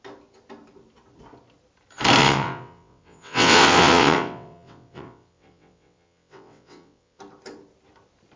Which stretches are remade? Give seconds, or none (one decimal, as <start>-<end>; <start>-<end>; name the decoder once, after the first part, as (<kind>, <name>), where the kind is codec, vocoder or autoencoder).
2.2-7.2 (vocoder, WaveNeXt)